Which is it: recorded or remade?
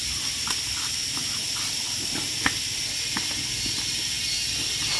recorded